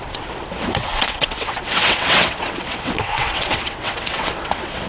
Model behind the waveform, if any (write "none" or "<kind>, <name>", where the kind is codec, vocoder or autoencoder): vocoder, WaveNeXt